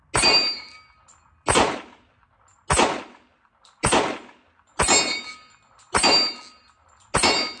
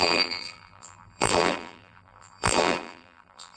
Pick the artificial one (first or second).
second